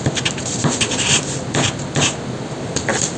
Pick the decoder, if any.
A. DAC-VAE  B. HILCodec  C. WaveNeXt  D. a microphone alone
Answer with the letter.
D